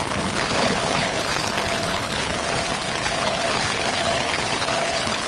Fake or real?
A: fake